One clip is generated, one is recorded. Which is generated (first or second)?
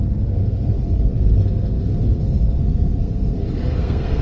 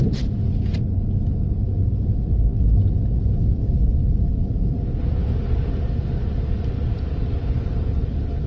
first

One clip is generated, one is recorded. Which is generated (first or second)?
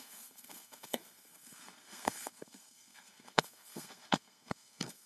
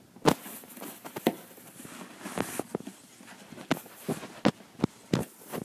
first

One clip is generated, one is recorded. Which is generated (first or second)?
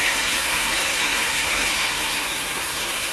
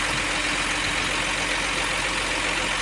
first